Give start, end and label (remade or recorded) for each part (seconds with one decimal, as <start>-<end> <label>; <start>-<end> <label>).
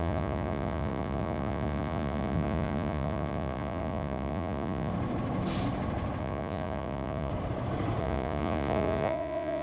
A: 0.0-4.9 remade; 4.9-6.2 recorded; 6.2-7.3 remade; 7.3-8.0 recorded; 8.0-9.6 remade